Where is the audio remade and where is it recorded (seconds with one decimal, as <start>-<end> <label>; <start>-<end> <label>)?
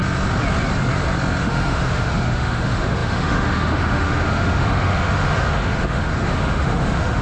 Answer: 0.0-1.4 recorded; 1.4-7.2 remade